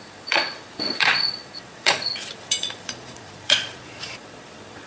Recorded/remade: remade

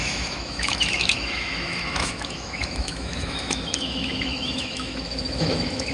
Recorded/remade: remade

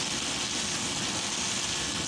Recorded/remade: recorded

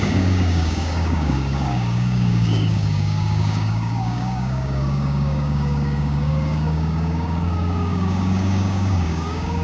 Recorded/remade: remade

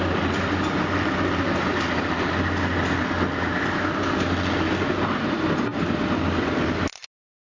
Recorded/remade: recorded